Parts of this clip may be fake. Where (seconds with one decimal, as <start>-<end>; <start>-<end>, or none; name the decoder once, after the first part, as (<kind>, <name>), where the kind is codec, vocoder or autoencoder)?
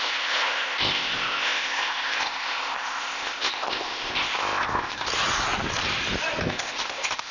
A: 0.0-5.1 (codec, ZipCodec); 6.4-7.3